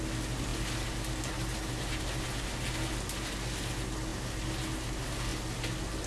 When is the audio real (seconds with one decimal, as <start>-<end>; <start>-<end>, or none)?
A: 0.0-6.1